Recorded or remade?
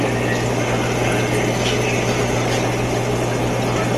recorded